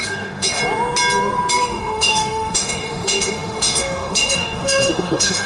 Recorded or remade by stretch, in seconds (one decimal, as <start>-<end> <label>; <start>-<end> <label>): 0.0-0.6 remade; 0.6-1.5 recorded; 1.5-5.5 remade